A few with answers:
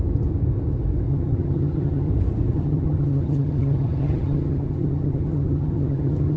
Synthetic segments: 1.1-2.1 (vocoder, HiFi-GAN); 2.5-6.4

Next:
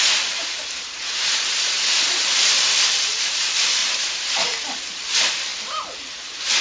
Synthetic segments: 0.0-5.5 (vocoder, BigVGAN v2); 6.1-6.6

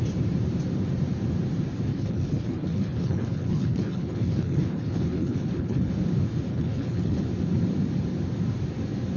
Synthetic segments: 1.9-5.9 (codec, HILCodec); 6.5-7.2

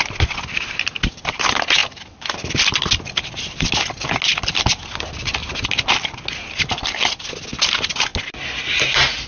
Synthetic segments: none

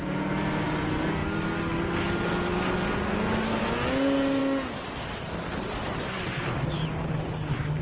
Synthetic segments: none

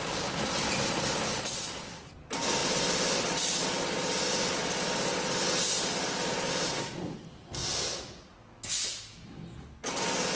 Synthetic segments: none

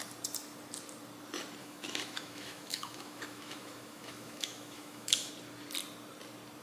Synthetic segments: 1.6-5.3 (autoencoder, DAC-VAE)

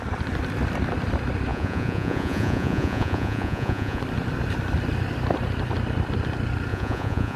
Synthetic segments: 1.5-4.0 (vocoder, Vocos); 6.7-7.4